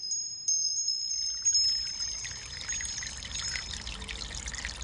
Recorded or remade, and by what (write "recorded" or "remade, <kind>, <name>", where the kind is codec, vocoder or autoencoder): recorded